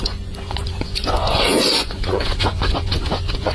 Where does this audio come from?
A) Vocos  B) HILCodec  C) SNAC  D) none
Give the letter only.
A